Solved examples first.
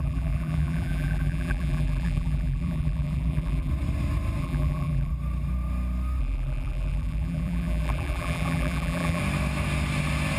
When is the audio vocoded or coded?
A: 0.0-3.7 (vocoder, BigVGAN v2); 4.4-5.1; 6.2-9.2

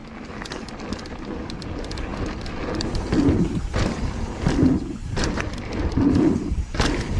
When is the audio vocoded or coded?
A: 0.8-7.2 (vocoder, BigVGAN v2)

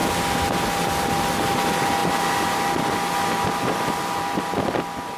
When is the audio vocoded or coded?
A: none